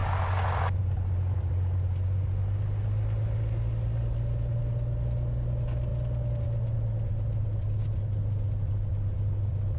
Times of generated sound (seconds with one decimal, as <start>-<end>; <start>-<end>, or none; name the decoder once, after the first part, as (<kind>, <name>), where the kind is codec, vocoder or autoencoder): none

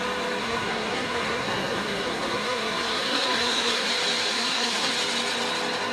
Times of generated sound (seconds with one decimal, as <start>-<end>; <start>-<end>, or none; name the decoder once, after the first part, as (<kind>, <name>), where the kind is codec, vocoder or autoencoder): 0.4-3.9 (codec, SNAC); 4.3-4.9

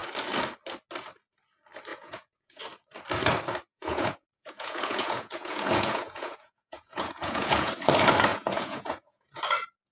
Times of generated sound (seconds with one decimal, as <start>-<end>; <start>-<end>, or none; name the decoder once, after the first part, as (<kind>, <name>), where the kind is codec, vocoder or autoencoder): 1.9-2.6 (vocoder, Vocos); 3.7-7.7; 8.3-9.4

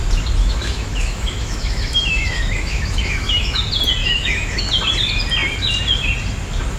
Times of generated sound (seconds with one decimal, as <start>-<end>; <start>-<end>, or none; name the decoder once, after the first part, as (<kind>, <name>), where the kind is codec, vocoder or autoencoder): 0.4-3.6 (autoencoder, DAC-VAE); 4.0-4.6